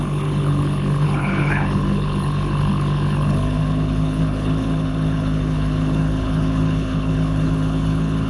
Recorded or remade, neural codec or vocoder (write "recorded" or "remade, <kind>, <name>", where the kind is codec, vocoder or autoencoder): remade, codec, HILCodec